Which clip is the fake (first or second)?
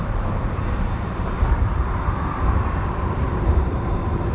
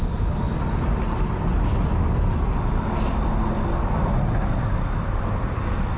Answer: first